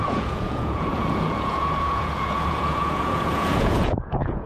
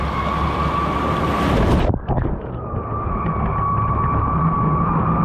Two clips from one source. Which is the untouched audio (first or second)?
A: second